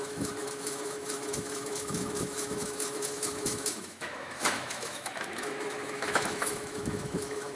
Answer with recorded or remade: remade